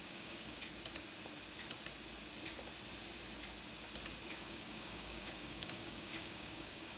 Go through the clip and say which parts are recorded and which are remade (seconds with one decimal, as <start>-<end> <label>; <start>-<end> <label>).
0.0-0.6 remade; 0.6-4.3 recorded; 4.3-7.0 remade